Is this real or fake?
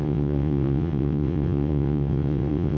fake